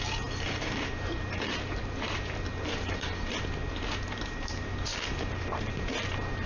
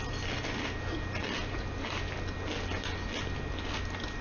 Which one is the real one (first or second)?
second